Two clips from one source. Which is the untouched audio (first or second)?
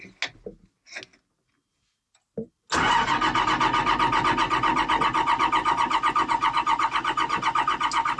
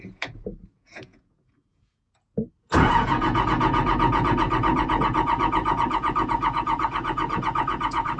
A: first